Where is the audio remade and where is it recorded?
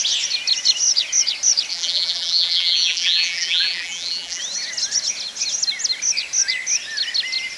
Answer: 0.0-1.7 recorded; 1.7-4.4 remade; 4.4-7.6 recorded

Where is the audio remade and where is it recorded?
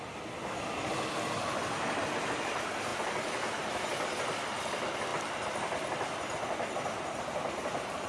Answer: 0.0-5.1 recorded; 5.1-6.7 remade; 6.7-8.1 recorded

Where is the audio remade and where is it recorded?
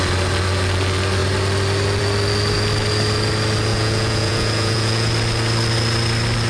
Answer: 0.0-3.7 recorded; 3.7-5.1 remade; 5.1-6.5 recorded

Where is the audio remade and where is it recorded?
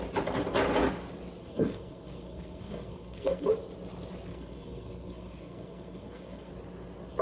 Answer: 0.0-1.4 recorded; 1.4-3.5 remade; 3.5-4.3 recorded; 4.3-6.5 remade; 6.5-7.2 recorded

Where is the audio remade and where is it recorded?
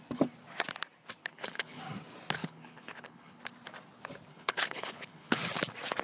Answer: 0.0-1.2 recorded; 1.2-1.8 remade; 1.8-2.4 recorded; 2.4-3.4 remade; 3.4-4.3 recorded; 4.3-5.5 remade; 5.5-6.0 recorded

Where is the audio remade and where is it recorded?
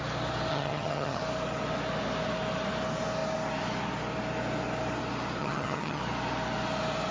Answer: 0.0-0.5 recorded; 0.5-1.2 remade; 1.2-5.4 recorded; 5.4-6.0 remade; 6.0-7.1 recorded